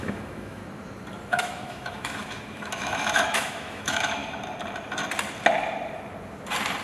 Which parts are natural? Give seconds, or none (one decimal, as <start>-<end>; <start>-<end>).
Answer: 0.6-1.3; 4.2-6.8